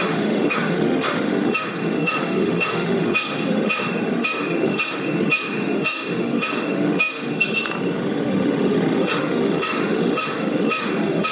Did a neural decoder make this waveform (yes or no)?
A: yes